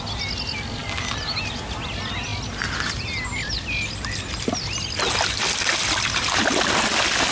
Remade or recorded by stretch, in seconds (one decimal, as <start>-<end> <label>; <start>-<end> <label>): 0.0-7.3 recorded